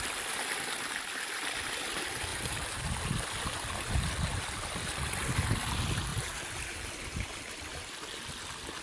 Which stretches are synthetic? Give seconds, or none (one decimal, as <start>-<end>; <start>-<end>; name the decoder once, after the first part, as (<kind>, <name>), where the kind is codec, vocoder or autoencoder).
2.3-2.9 (vocoder, BigVGAN v2); 6.1-7.9